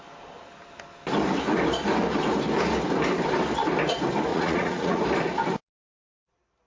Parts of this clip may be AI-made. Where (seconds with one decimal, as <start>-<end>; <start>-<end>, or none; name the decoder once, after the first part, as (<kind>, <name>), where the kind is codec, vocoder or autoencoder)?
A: 4.3-5.0 (vocoder, Vocos)